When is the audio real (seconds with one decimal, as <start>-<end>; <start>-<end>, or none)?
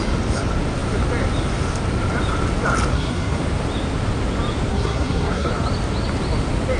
0.0-2.9; 3.4-4.7; 5.5-6.8